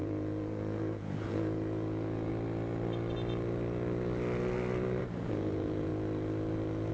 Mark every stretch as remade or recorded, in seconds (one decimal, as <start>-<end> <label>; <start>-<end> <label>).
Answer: 0.0-2.3 remade; 2.3-5.0 recorded; 5.0-5.9 remade; 5.9-6.9 recorded